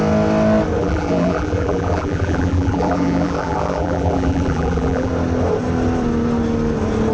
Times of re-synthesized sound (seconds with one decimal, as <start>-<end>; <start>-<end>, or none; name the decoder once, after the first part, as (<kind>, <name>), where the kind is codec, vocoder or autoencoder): 0.8-5.1 (vocoder, BigVGAN v2)